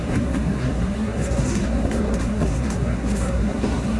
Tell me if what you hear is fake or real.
fake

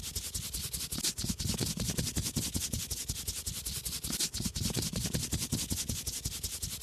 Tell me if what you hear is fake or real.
real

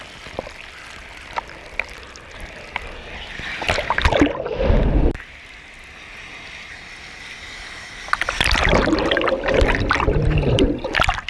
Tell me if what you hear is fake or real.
real